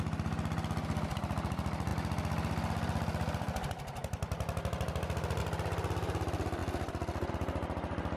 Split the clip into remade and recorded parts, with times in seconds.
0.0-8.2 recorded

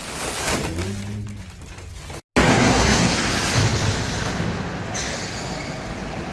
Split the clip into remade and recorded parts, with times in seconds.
0.0-2.5 recorded; 2.5-3.3 remade; 3.3-6.3 recorded

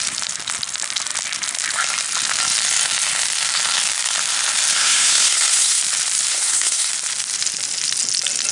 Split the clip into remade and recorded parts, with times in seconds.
0.0-4.7 recorded; 4.7-5.8 remade; 5.8-6.3 recorded; 6.3-6.9 remade; 6.9-8.5 recorded

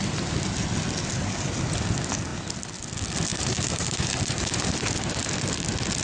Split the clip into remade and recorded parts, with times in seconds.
0.0-3.3 recorded; 3.3-4.9 remade; 4.9-6.0 recorded

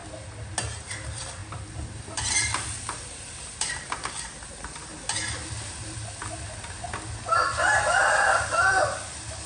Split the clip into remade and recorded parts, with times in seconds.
0.0-0.6 recorded; 0.6-4.9 remade; 4.9-8.0 recorded; 8.0-9.5 remade

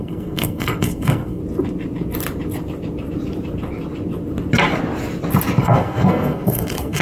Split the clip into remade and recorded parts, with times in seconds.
0.0-1.4 remade; 1.4-5.6 recorded; 5.6-7.0 remade

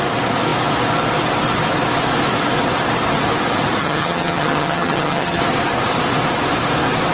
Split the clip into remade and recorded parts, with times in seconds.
0.0-3.8 recorded; 3.8-5.4 remade; 5.4-7.1 recorded